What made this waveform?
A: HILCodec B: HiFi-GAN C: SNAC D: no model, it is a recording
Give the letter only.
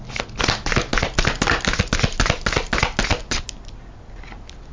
D